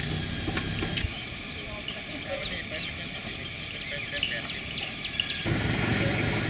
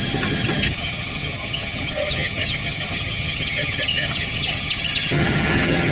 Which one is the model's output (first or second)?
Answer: second